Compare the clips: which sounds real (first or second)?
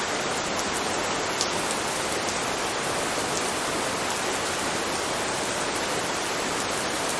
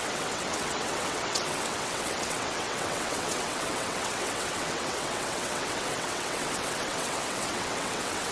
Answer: first